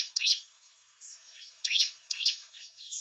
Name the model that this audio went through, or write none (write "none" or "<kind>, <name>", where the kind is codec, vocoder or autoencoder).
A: codec, SNAC